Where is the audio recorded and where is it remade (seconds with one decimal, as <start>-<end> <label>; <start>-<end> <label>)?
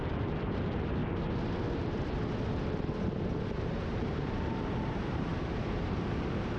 0.0-1.0 remade; 1.0-3.6 recorded; 3.6-6.6 remade